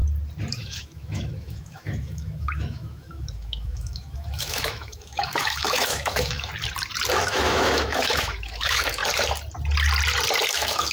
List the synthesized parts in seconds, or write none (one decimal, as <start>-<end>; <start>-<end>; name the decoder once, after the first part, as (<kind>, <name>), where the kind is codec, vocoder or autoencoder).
0.5-6.5 (autoencoder, DAC-VAE); 7.1-9.0; 10.5-10.9